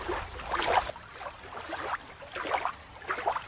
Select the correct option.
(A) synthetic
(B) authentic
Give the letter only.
B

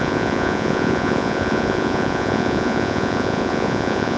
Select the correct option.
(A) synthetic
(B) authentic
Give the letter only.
A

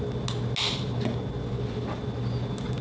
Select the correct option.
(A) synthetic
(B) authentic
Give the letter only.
B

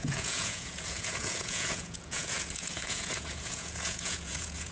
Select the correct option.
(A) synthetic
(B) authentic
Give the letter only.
A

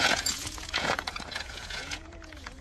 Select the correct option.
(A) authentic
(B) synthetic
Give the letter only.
B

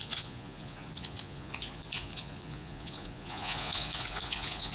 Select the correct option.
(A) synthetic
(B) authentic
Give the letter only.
A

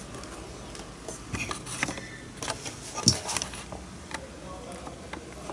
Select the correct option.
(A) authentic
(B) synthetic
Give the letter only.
A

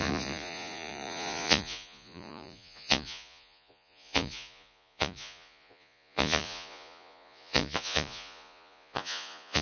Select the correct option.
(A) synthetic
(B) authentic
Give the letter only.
A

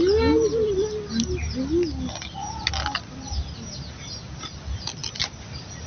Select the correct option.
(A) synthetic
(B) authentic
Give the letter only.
B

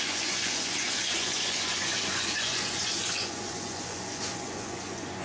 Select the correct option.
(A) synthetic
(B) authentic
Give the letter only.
A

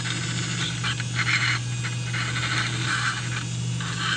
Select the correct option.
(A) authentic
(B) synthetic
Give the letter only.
A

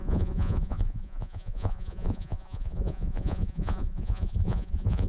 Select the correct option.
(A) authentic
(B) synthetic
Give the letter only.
B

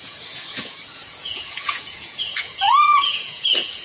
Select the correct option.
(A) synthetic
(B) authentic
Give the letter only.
A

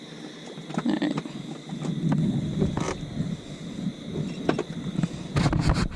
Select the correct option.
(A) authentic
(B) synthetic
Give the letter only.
A